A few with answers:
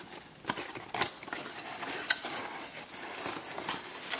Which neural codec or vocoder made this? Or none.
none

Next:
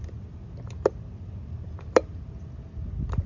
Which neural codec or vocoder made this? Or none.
none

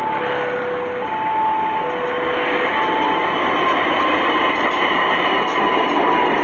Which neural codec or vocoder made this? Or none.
none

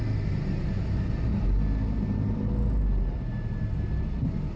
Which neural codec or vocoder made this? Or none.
none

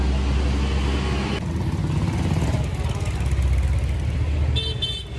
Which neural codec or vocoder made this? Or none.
none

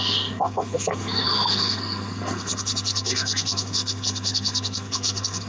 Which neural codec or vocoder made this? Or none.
codec, SNAC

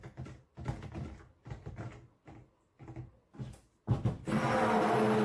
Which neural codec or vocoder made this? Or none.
none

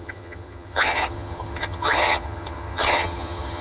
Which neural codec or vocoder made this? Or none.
vocoder, HiFi-GAN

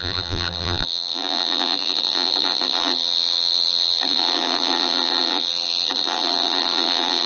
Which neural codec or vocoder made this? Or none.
vocoder, BigVGAN v2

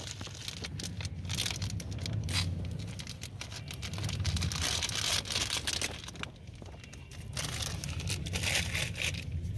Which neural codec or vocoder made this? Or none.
none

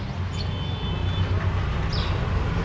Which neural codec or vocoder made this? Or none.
none